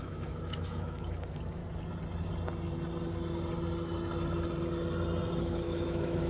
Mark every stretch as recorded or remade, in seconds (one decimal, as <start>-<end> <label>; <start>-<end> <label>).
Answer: 0.0-1.6 remade; 1.6-5.4 recorded; 5.4-6.3 remade